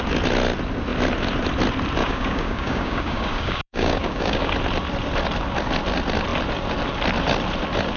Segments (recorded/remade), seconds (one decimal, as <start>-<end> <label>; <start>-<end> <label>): 0.0-2.0 recorded; 2.0-4.5 remade; 4.5-8.0 recorded